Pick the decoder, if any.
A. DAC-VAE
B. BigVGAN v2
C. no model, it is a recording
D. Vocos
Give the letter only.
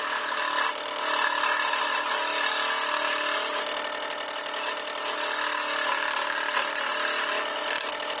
C